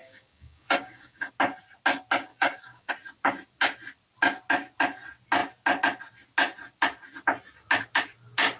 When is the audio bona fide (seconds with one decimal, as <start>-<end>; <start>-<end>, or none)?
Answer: 1.3-2.3; 2.9-8.6

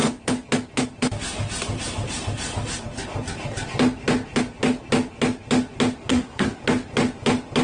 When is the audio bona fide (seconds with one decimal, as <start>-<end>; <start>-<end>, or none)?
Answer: 0.0-6.1; 6.6-7.6

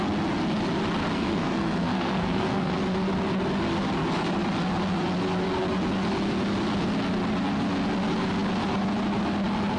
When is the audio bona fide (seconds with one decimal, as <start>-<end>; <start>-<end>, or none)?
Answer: 0.0-1.0; 2.8-9.8

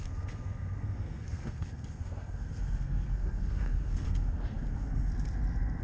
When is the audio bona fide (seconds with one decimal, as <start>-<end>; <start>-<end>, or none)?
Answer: 5.1-5.8